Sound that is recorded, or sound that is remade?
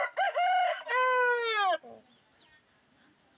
recorded